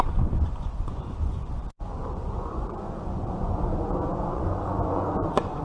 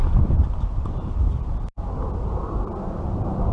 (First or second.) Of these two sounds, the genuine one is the second